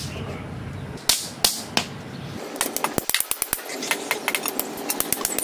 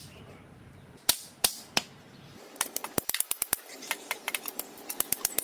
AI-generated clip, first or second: second